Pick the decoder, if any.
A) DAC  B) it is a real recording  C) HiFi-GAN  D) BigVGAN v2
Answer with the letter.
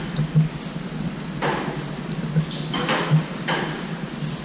B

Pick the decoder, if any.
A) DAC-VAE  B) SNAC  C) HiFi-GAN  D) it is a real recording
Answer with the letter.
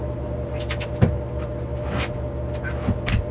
D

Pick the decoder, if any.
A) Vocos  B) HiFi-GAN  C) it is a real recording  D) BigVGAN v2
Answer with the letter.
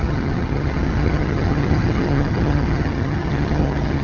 B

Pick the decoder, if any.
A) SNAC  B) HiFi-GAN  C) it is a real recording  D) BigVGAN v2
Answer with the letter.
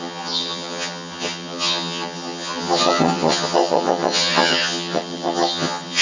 B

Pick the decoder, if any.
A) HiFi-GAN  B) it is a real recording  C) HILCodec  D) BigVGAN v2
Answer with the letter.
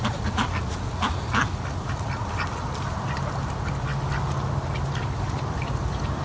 B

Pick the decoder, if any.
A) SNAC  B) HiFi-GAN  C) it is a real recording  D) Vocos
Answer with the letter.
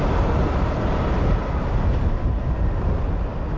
C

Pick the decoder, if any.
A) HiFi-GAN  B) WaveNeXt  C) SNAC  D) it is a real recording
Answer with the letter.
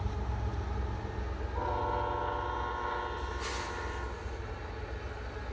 D